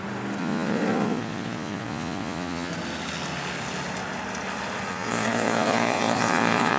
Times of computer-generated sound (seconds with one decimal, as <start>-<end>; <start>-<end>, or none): 0.4-2.7; 4.9-6.8

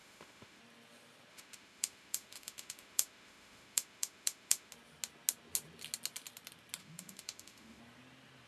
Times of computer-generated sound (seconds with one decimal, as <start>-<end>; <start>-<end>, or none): 0.0-0.6; 1.3-4.7; 6.8-7.8

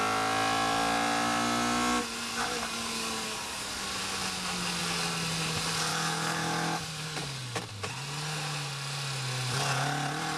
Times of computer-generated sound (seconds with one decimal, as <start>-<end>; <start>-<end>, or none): 2.3-3.7; 5.9-7.7

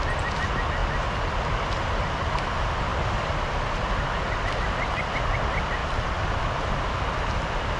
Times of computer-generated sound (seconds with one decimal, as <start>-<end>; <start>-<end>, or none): 5.8-6.4

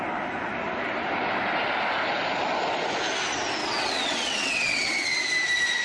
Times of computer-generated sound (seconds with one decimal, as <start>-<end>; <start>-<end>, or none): 3.6-5.2

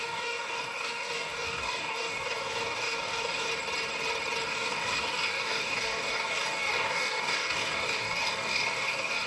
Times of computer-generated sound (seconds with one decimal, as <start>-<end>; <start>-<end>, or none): 0.0-3.5; 4.5-9.3